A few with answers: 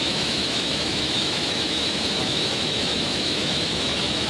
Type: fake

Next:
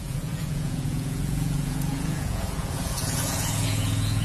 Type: fake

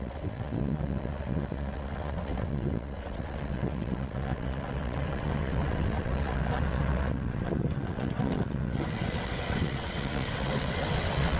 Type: fake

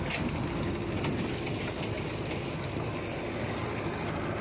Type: real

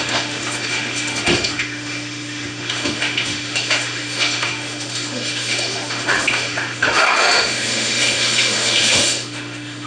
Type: fake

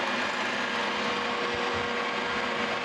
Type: real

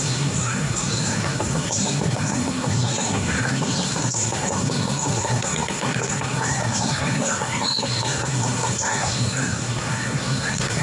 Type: fake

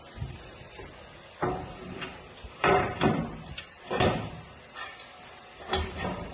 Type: fake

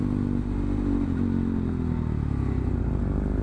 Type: real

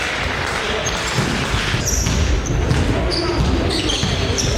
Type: real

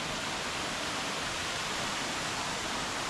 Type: fake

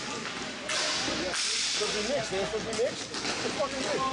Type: real